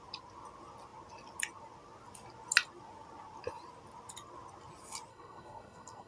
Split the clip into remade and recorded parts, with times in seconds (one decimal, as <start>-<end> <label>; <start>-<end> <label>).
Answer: 0.0-5.1 recorded; 5.1-6.1 remade